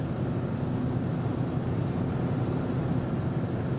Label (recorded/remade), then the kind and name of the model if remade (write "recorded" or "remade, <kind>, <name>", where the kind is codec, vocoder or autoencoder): recorded